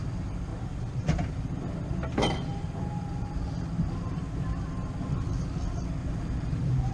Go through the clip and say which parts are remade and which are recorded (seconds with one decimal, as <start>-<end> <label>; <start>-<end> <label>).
0.0-0.5 recorded; 0.5-1.5 remade; 1.5-6.0 recorded; 6.0-6.9 remade